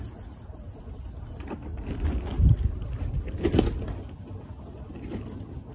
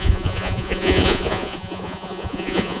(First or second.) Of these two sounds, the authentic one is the first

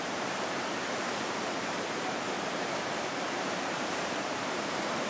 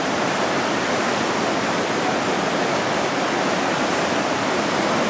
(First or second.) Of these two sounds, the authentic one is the second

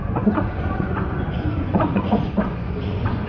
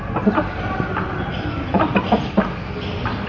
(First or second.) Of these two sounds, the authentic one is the second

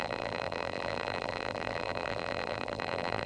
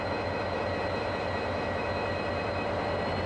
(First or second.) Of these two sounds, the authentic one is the second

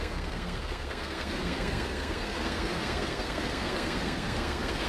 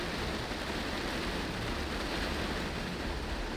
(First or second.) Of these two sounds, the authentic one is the second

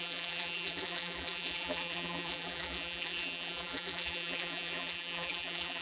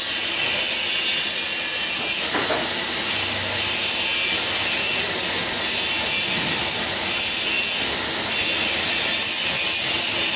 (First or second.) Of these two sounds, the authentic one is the second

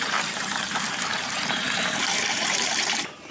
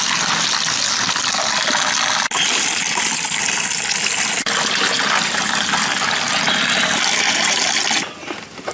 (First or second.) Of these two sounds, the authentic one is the second